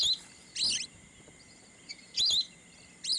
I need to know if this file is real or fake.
real